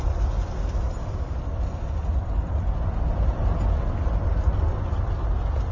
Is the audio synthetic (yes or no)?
no